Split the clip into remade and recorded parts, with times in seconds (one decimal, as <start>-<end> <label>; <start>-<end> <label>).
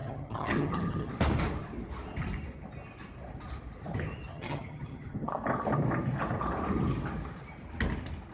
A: 0.0-1.1 remade; 1.1-4.3 recorded; 4.3-5.3 remade; 5.3-8.3 recorded